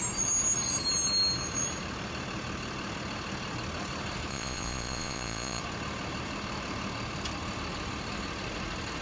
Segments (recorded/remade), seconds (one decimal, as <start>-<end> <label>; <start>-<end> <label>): 0.0-4.3 recorded; 4.3-5.6 remade; 5.6-9.0 recorded